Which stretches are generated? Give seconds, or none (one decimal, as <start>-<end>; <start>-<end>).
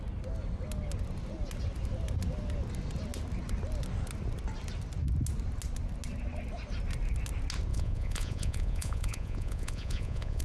7.7-10.4